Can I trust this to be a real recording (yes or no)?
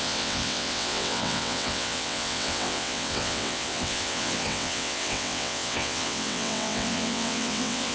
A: no